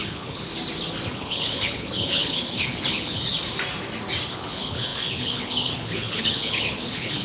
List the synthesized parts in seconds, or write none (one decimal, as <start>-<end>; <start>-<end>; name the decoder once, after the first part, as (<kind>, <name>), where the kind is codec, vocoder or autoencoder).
0.0-0.5 (codec, HILCodec); 1.1-3.3; 4.3-7.2